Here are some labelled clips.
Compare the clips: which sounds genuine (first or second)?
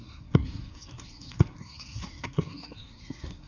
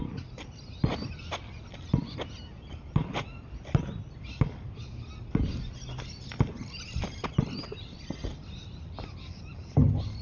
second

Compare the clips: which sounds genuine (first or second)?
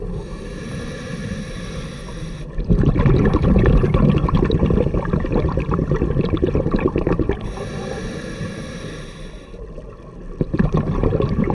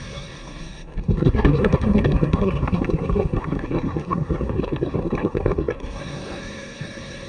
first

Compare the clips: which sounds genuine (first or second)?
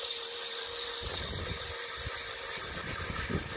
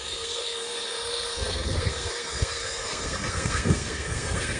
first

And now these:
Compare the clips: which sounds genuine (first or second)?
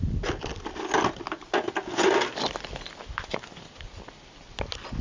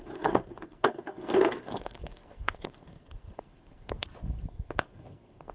first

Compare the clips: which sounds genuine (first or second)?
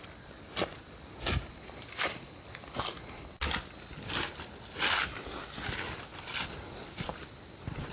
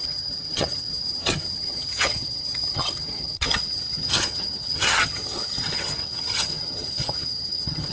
first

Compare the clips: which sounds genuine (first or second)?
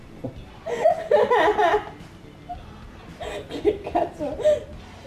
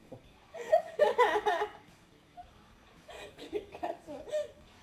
first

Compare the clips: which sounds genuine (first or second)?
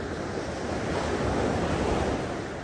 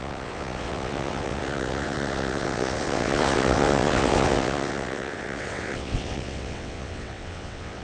first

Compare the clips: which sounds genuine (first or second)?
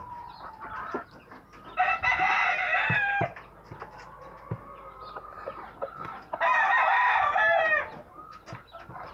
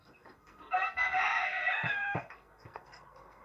first